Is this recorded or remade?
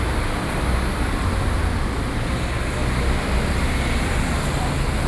recorded